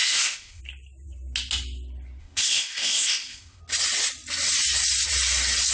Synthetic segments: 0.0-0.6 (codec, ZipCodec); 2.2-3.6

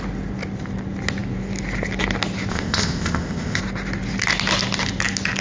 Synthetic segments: 2.5-3.6 (codec, ZipCodec)

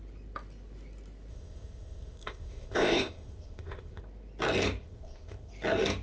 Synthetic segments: 1.3-4.0 (codec, ZipCodec); 4.8-5.5

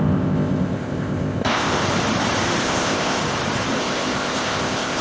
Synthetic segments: 0.0-1.8 (codec, ZipCodec); 2.6-3.2; 3.8-5.0

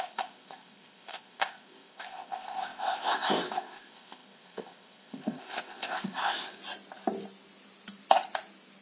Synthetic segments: 0.0-6.6 (codec, ZipCodec)

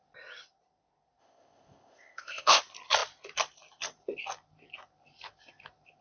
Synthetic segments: 1.2-2.6 (codec, ZipCodec)

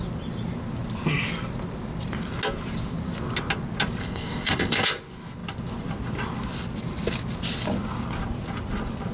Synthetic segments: 4.0-5.0 (codec, ZipCodec)

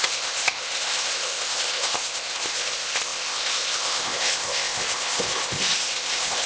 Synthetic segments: 0.0-6.5 (codec, ZipCodec)